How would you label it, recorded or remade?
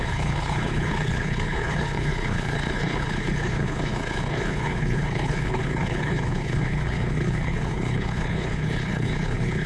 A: remade